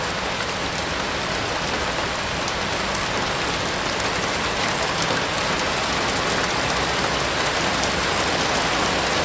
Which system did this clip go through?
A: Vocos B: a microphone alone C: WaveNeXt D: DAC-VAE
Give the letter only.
B